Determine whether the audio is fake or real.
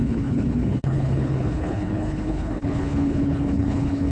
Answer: fake